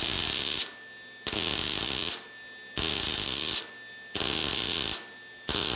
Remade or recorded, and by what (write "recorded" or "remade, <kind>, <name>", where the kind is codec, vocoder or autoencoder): recorded